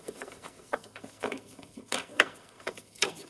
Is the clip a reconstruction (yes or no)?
yes